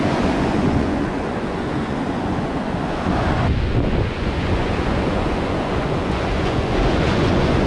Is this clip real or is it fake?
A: fake